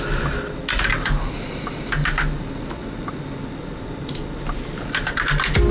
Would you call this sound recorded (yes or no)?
yes